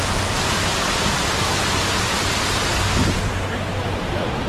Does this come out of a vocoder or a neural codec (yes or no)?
no